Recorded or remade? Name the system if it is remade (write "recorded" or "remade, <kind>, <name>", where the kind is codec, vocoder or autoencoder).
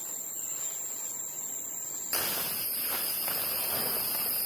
recorded